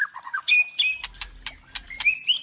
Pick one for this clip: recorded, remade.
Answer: recorded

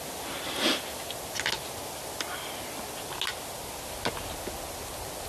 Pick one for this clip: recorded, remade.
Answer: recorded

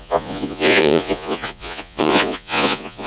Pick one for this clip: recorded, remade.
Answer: remade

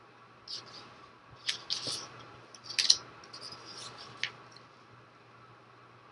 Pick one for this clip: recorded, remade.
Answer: recorded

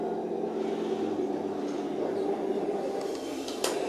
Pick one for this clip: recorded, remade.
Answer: recorded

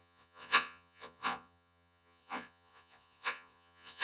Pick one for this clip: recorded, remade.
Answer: remade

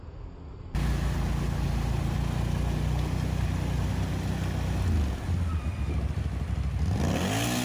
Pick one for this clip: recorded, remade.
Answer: recorded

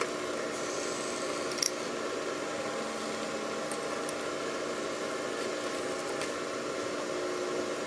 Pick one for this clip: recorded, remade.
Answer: recorded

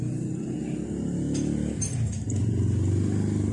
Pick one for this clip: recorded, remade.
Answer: recorded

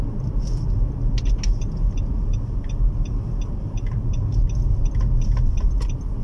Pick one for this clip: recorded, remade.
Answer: recorded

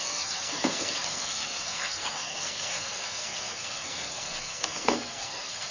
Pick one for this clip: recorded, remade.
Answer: remade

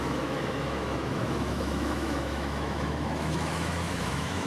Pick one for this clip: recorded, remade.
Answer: remade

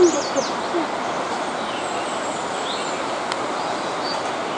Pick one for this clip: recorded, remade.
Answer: recorded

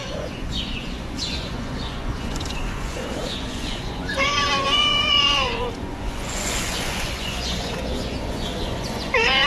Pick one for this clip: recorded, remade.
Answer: remade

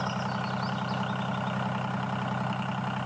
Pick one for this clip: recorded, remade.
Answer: recorded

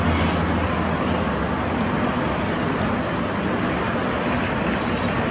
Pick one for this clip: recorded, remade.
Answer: recorded